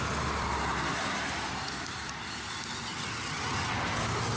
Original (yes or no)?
yes